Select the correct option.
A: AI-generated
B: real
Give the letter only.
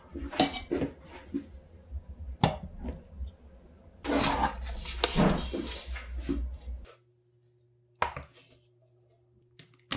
B